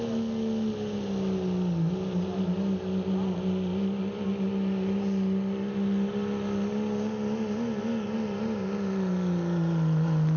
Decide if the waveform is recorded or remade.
recorded